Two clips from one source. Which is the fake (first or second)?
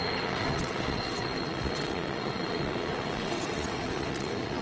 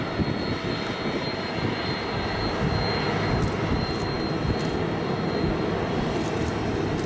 first